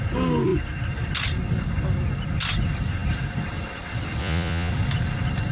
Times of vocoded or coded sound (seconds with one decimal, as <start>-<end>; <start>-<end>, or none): 4.2-4.7